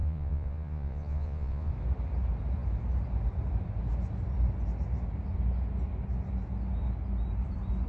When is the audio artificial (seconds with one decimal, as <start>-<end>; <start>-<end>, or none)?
0.0-1.7